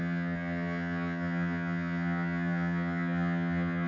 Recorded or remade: remade